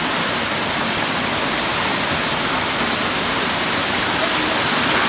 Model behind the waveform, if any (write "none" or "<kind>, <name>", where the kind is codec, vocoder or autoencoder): none